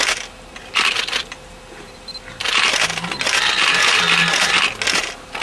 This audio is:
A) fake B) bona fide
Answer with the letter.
B